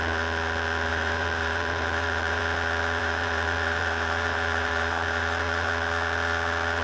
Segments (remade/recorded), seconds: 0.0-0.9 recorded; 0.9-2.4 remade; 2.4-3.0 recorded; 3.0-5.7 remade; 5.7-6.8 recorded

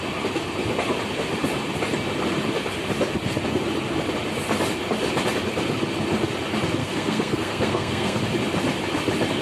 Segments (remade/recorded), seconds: 0.0-6.8 recorded; 6.8-8.2 remade; 8.2-9.4 recorded

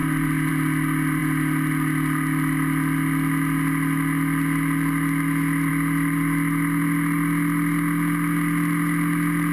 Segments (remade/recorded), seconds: 0.0-0.5 remade; 0.5-9.5 recorded

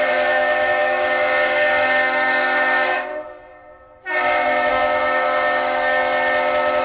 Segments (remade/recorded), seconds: 0.0-3.1 remade; 3.1-4.7 recorded; 4.7-6.0 remade; 6.0-6.8 recorded

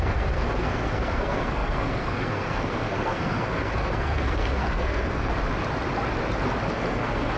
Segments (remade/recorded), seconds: 0.0-5.3 remade; 5.3-6.7 recorded; 6.7-7.4 remade

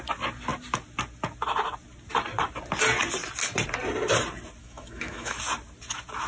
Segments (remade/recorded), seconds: 0.0-4.6 recorded; 4.6-5.4 remade; 5.4-6.3 recorded